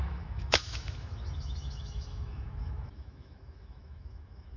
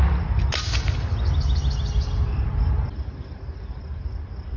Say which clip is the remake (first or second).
first